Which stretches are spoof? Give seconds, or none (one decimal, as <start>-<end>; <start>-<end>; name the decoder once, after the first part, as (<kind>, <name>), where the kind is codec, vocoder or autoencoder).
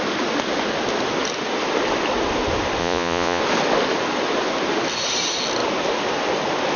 2.8-3.4 (vocoder, Vocos)